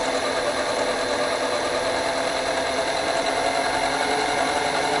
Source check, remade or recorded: recorded